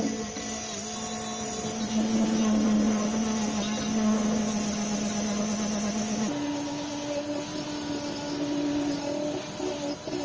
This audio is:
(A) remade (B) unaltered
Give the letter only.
B